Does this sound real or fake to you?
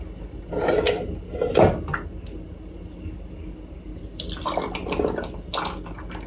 real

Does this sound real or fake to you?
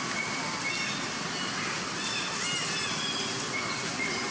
real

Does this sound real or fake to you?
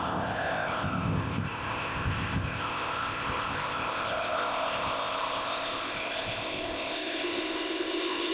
fake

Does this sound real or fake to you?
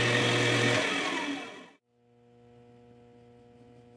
real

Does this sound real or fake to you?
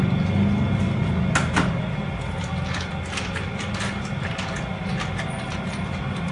real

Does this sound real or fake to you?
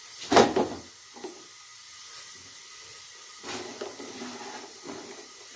real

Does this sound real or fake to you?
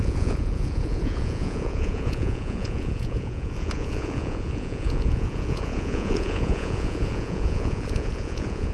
fake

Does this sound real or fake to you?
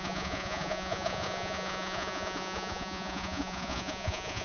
fake